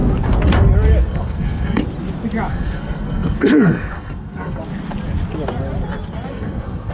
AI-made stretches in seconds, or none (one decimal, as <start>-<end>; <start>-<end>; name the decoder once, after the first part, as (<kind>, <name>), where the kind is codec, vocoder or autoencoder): 1.0-1.8 (codec, SNAC); 2.5-4.6; 6.3-6.9